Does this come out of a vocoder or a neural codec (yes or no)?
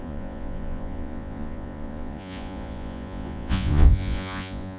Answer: yes